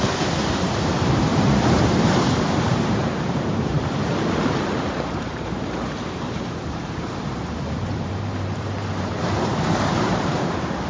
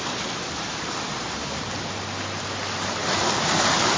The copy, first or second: first